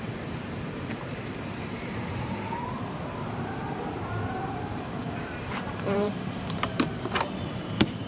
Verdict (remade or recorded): remade